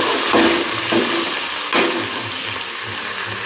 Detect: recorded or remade recorded